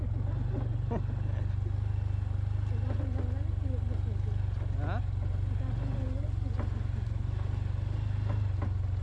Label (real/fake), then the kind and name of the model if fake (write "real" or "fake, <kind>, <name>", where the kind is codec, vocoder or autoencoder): real